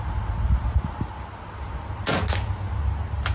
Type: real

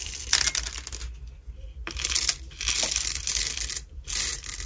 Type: real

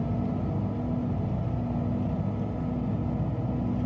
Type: real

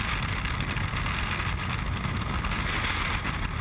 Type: real